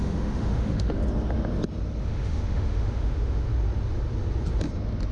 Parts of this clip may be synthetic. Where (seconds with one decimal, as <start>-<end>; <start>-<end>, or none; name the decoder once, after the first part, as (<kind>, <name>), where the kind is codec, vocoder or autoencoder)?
0.0-1.0 (autoencoder, DAC-VAE); 2.0-3.5